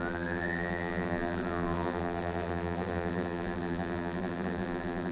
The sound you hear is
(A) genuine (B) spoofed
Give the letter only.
B